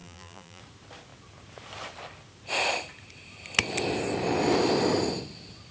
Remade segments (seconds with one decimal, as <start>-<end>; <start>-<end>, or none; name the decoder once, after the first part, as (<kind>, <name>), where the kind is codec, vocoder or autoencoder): 0.0-0.6 (vocoder, BigVGAN v2)